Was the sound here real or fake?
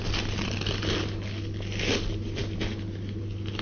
real